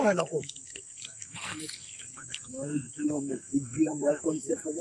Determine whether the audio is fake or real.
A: fake